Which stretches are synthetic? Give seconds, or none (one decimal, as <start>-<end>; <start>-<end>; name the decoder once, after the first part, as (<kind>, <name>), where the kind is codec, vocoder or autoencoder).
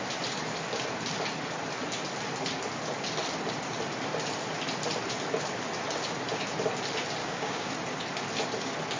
7.2-7.7 (codec, DAC)